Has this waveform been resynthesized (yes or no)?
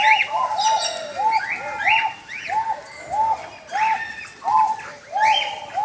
no